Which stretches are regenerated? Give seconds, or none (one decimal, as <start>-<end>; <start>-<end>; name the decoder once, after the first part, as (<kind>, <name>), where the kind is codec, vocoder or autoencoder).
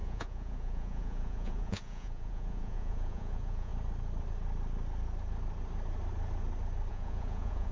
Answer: 0.0-3.7 (vocoder, Vocos); 6.9-7.7